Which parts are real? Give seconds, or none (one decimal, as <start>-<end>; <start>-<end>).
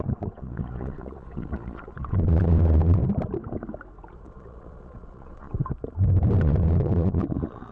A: 3.0-4.1; 5.6-6.4